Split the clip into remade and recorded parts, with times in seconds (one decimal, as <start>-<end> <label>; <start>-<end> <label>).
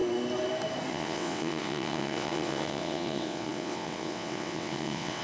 0.0-0.9 recorded; 0.9-5.2 remade